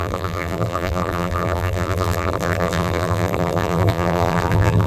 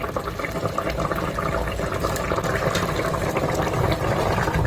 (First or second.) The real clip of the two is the second